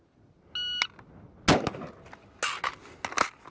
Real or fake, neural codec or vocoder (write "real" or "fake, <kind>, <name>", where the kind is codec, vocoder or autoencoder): real